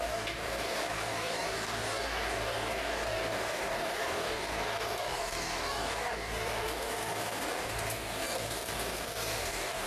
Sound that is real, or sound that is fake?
fake